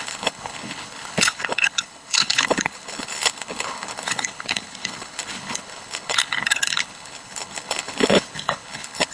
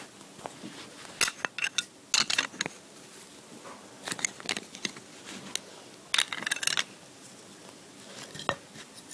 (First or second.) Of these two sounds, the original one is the second